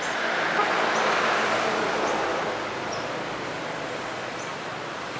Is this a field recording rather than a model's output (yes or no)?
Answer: yes